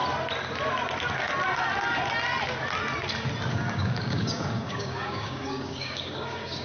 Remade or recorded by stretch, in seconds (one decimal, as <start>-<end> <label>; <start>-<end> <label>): 0.0-3.5 recorded; 3.5-6.6 remade